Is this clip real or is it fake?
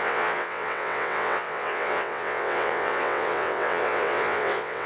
fake